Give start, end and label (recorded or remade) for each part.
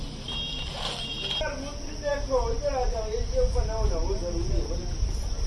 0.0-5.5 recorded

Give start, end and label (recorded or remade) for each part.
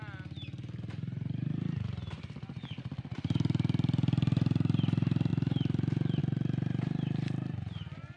0.0-8.2 recorded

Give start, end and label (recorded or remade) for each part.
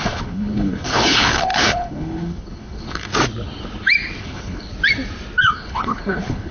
0.0-3.1 remade; 3.1-4.2 recorded; 4.2-4.7 remade; 4.7-5.4 recorded; 5.4-6.5 remade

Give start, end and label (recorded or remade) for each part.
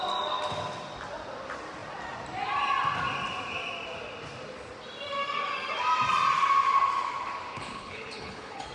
0.0-7.5 recorded; 7.5-8.7 remade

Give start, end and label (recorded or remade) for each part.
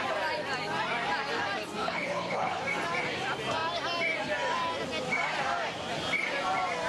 0.0-1.8 recorded; 1.8-2.6 remade; 2.6-6.9 recorded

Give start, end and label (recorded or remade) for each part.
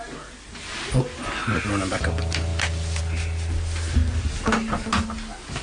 0.0-5.6 recorded